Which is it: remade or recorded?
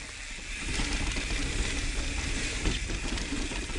recorded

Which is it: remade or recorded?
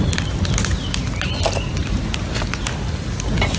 recorded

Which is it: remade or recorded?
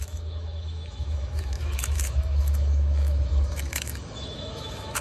remade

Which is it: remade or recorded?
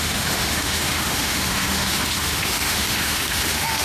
remade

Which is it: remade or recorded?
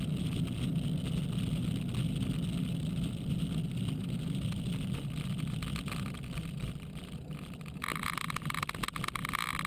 recorded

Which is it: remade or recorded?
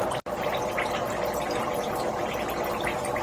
recorded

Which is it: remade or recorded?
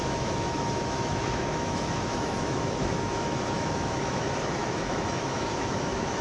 remade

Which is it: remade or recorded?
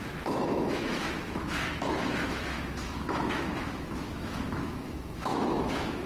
remade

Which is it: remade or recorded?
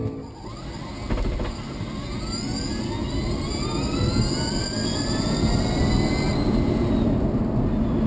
recorded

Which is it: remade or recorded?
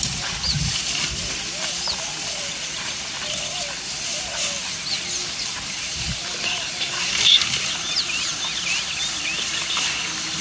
recorded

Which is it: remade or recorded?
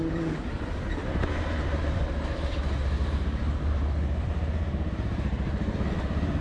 recorded